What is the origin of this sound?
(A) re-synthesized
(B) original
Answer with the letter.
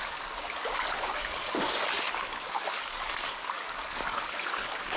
A